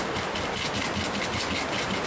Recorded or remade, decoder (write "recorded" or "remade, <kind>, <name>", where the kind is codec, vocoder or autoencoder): recorded